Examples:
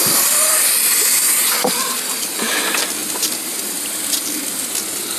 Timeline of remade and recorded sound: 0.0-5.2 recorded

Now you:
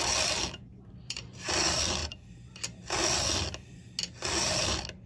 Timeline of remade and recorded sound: 0.0-0.7 recorded; 0.7-1.5 remade; 1.5-2.0 recorded; 2.0-2.6 remade; 2.6-5.1 recorded